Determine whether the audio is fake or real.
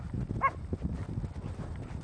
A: real